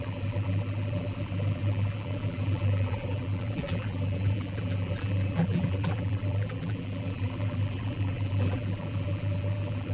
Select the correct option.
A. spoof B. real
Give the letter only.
A